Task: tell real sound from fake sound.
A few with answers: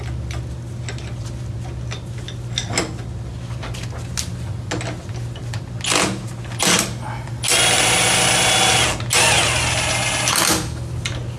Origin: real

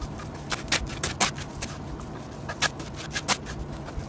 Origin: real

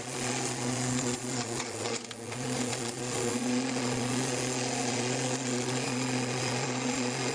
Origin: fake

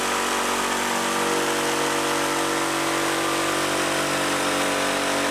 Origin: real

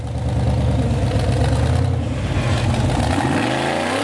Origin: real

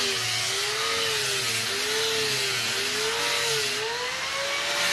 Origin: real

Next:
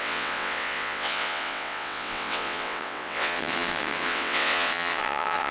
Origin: fake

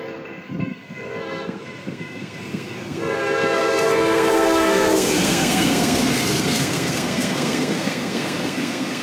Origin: fake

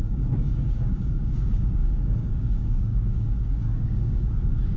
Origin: fake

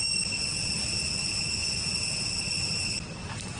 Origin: real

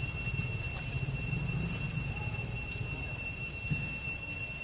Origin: real